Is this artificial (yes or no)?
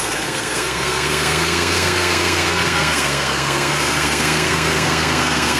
yes